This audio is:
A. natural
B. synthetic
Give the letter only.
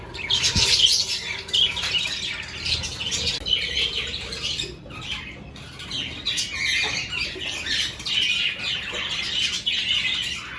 A